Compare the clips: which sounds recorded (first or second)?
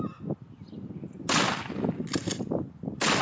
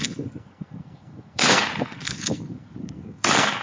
first